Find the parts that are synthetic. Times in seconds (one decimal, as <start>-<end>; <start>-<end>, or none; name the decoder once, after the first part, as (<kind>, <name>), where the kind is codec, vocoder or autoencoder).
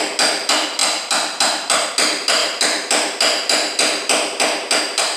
none